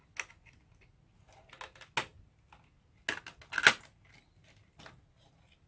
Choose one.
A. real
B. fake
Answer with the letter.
A